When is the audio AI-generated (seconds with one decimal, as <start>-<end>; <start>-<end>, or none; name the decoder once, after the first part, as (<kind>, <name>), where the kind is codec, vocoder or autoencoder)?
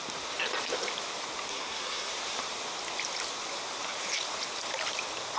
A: 1.5-2.1 (codec, SNAC)